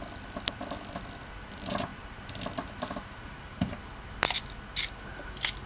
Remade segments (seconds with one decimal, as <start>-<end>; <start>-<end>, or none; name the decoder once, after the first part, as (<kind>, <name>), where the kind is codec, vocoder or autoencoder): none